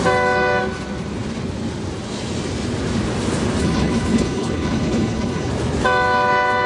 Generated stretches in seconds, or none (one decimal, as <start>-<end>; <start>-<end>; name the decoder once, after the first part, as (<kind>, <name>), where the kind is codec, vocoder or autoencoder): 3.6-5.5 (codec, HILCodec)